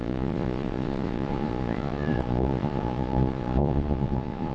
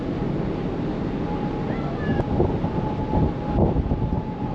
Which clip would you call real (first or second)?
second